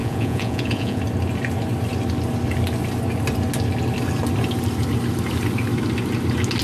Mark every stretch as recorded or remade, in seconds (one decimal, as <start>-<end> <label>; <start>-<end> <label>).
0.0-1.0 remade; 1.0-6.6 recorded